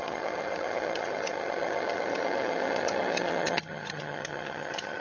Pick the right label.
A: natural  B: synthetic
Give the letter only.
B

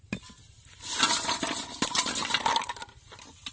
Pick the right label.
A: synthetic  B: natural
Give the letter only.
B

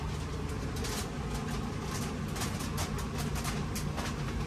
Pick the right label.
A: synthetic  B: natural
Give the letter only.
B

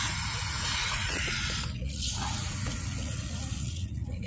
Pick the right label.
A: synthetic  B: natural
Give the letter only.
A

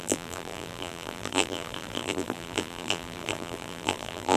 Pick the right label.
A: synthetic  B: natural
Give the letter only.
A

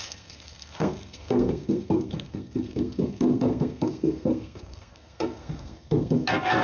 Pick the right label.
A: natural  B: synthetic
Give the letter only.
B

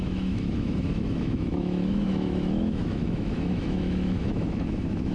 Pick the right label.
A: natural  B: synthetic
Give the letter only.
B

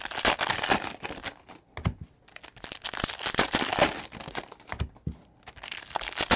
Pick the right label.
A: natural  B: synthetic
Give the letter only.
A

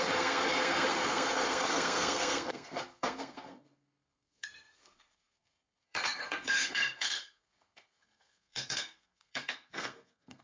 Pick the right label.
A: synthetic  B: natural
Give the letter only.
A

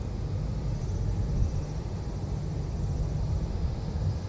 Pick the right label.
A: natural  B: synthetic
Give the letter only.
A